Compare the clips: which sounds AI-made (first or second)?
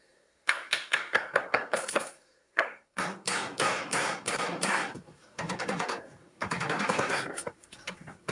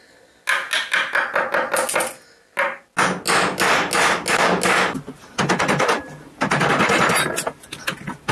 first